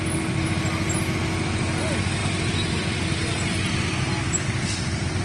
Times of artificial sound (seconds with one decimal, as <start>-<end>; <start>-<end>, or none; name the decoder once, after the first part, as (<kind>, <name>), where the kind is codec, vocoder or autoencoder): none